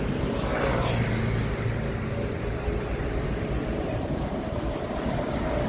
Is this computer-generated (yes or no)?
no